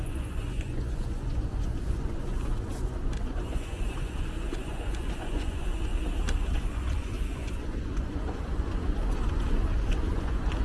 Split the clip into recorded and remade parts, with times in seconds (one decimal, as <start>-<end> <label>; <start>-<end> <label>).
0.0-5.9 remade; 5.9-6.5 recorded; 6.5-10.6 remade